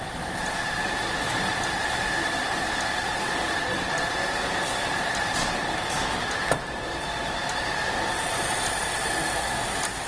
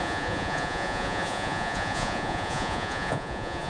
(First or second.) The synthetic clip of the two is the second